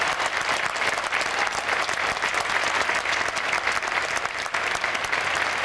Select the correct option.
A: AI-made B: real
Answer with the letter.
B